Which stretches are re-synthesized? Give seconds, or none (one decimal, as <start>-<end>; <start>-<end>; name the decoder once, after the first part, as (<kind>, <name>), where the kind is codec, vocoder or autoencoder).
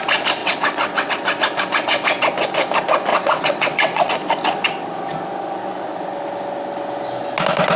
0.4-1.1 (vocoder, WaveNeXt); 3.1-4.1